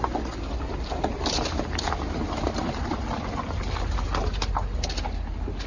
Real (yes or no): yes